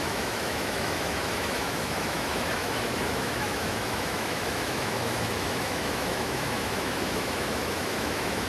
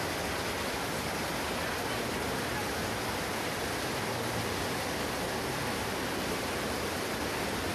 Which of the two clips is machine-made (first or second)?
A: first